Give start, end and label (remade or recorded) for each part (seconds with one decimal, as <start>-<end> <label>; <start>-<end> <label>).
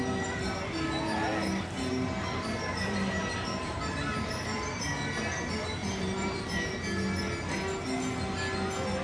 0.0-2.8 recorded; 2.8-4.3 remade; 4.3-5.8 recorded; 5.8-6.4 remade; 6.4-9.0 recorded